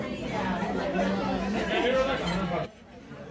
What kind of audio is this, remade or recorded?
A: recorded